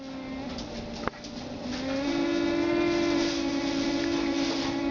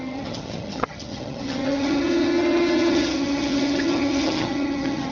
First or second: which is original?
first